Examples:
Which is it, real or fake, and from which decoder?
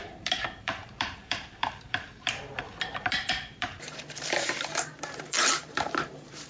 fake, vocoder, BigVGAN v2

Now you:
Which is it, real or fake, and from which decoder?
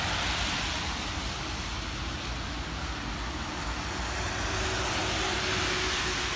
real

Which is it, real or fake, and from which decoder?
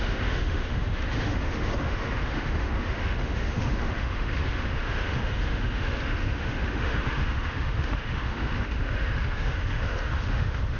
fake, autoencoder, DAC-VAE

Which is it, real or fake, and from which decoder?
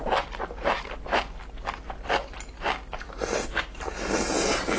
real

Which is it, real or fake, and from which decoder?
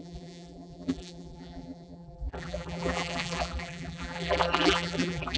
fake, vocoder, BigVGAN v2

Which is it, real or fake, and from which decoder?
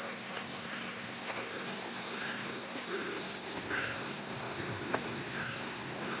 fake, codec, SNAC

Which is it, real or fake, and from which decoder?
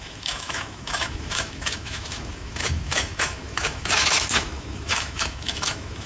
fake, autoencoder, DAC-VAE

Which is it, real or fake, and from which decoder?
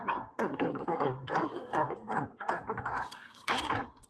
fake, codec, SNAC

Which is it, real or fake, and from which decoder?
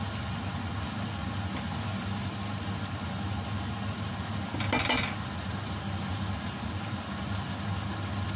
real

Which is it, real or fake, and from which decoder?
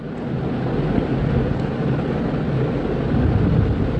real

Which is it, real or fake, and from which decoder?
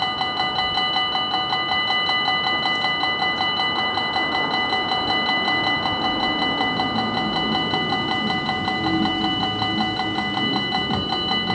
real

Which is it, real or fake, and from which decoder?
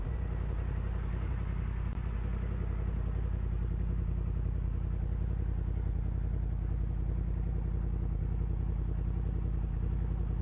real